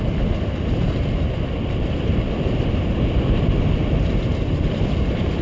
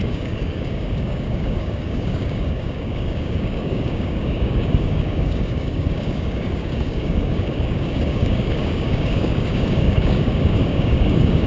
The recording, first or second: first